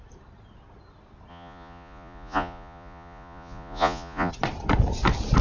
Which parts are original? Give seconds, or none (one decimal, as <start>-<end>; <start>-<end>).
0.0-1.3; 4.3-5.4